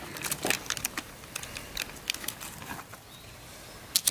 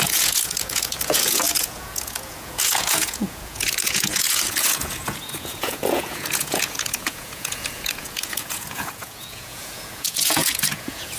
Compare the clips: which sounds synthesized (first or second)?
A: second